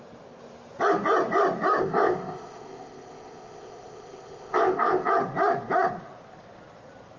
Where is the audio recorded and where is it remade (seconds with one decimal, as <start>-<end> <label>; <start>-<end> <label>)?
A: 0.0-1.8 recorded; 1.8-5.1 remade; 5.1-7.2 recorded